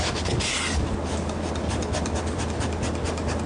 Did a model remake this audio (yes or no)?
no